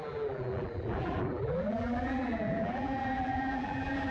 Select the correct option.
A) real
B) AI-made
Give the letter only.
B